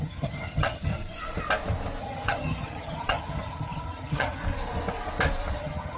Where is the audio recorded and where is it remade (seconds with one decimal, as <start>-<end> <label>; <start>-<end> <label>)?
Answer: 0.0-0.9 remade; 0.9-2.0 recorded; 2.0-4.4 remade; 4.4-5.6 recorded; 5.6-6.0 remade